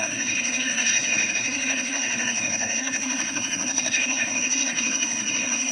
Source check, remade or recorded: remade